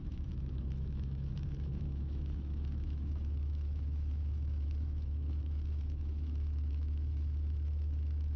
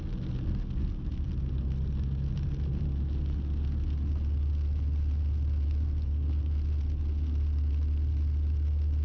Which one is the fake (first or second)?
first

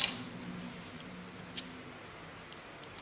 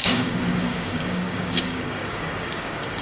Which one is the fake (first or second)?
second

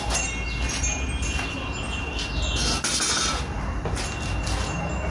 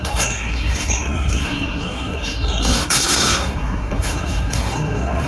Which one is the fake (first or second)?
second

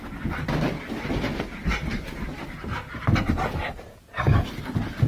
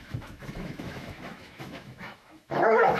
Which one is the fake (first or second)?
second